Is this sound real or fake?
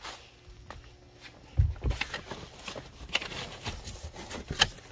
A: real